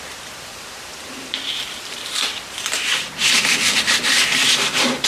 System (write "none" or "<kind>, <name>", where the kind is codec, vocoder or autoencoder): vocoder, BigVGAN v2